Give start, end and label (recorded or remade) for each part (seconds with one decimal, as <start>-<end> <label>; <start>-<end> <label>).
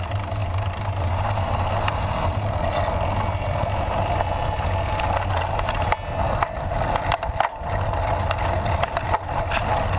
0.0-10.0 recorded